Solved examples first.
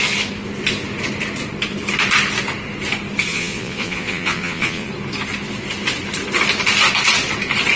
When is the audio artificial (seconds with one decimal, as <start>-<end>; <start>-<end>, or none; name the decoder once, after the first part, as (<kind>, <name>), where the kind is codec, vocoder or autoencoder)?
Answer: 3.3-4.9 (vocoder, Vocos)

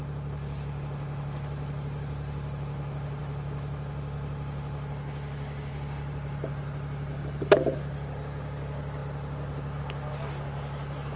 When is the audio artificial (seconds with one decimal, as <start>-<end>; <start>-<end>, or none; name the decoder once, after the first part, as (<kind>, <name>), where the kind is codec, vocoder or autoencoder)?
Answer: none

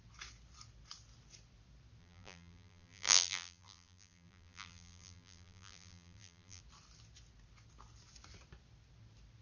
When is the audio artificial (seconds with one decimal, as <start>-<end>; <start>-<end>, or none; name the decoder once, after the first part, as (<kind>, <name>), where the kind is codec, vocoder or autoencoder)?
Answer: 2.0-6.6 (vocoder, BigVGAN v2)

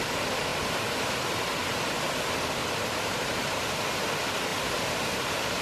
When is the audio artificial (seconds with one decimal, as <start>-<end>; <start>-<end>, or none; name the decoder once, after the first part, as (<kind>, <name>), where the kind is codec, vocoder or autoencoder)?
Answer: 2.6-3.7 (vocoder, BigVGAN v2); 4.5-5.6

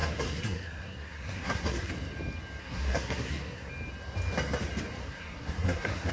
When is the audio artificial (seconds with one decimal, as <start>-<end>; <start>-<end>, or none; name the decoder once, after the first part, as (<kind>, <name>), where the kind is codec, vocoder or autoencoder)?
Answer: 0.0-1.9 (codec, SNAC); 2.6-3.7; 5.0-6.1

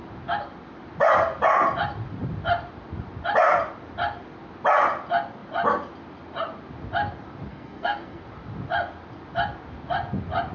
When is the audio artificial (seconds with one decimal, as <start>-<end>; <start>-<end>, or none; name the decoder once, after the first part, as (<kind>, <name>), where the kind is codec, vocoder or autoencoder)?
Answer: 7.5-8.2 (codec, SNAC)

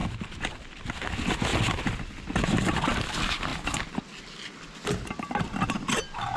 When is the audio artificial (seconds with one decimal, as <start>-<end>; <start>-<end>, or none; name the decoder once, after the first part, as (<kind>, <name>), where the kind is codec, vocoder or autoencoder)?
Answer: 1.5-3.1 (vocoder, BigVGAN v2)

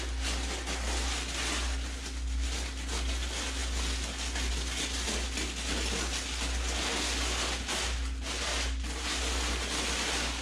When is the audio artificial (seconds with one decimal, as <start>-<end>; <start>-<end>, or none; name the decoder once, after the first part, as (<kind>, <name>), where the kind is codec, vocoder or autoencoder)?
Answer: none